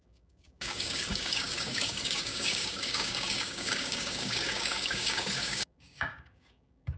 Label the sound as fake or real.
fake